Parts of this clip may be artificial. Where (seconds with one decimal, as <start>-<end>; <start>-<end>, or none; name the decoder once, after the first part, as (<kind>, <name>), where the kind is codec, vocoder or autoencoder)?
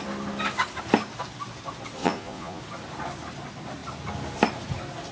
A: 2.0-2.6 (vocoder, Vocos)